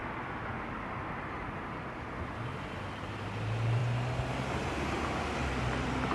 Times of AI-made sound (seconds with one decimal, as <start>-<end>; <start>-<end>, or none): none